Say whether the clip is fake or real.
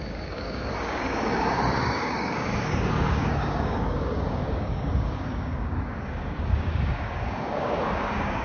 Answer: fake